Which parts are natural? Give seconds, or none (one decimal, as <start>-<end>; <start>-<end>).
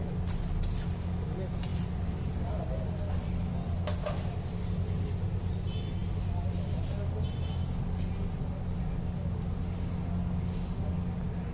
0.0-11.5